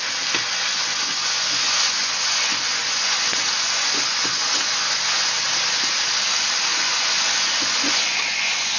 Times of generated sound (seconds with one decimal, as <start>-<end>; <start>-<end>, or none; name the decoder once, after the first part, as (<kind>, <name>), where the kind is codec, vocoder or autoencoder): 0.7-5.4 (vocoder, Vocos); 6.7-8.8